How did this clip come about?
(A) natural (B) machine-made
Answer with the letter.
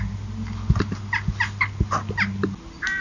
A